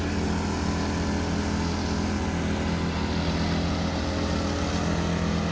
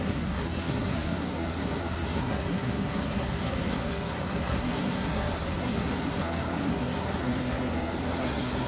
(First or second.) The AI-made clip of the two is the second